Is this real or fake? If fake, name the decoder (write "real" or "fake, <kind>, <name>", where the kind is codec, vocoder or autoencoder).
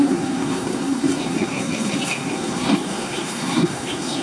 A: fake, codec, SNAC